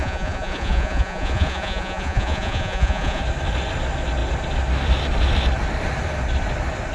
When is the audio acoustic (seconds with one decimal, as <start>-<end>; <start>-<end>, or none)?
3.2-6.9